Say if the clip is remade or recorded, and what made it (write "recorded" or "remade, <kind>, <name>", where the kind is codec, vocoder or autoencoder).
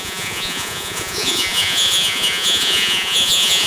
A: remade, vocoder, Vocos